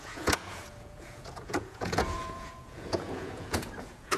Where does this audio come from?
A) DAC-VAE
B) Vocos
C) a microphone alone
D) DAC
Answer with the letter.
B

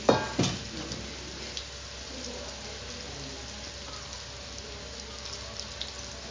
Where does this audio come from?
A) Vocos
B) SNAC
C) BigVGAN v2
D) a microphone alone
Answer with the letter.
D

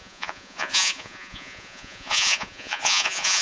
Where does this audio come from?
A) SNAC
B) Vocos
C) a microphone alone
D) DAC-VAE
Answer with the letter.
B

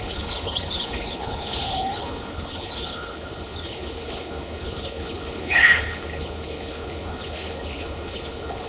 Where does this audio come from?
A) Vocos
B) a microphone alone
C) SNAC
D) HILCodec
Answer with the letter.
D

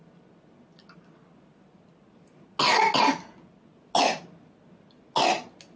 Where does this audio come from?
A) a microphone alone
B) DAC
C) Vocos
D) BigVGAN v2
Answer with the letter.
A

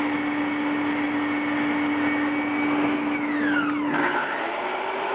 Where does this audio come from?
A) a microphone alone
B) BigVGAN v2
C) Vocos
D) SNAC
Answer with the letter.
A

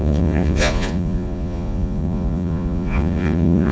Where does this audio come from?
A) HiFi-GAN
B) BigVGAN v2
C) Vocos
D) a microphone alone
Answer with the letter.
C